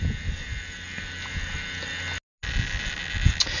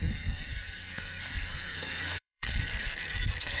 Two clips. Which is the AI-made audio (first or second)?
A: second